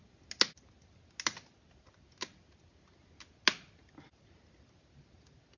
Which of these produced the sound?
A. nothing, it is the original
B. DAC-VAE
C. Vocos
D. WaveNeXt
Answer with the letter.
A